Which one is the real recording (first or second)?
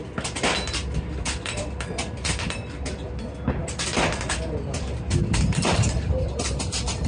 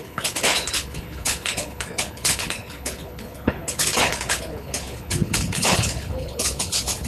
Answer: first